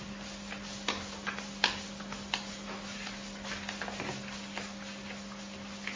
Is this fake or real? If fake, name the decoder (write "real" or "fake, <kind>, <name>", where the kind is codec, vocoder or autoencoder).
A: real